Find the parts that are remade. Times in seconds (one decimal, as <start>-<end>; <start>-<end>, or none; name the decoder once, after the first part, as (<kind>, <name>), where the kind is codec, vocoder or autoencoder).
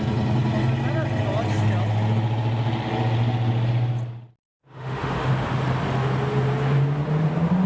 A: 4.4-5.3 (autoencoder, DAC-VAE)